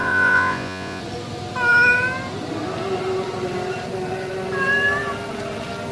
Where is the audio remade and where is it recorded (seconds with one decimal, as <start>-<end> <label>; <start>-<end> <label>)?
0.0-1.0 remade; 1.0-5.9 recorded